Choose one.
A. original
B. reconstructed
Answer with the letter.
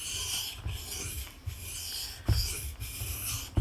A